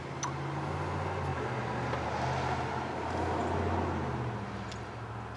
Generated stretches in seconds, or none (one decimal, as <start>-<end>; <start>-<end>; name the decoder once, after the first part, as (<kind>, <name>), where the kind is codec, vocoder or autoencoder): none